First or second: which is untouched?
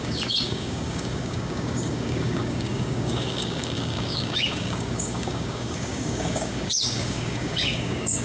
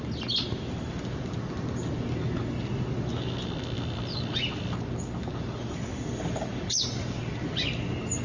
second